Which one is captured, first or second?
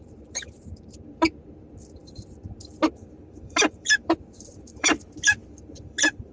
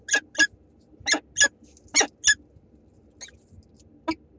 second